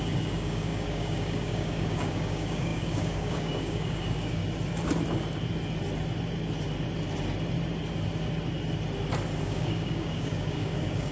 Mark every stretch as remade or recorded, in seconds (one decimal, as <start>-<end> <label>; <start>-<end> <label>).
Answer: 0.0-4.4 remade; 4.4-9.4 recorded; 9.4-11.1 remade